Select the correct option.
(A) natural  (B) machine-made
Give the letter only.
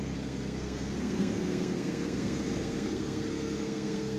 B